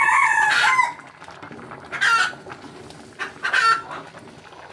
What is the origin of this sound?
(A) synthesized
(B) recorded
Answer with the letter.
B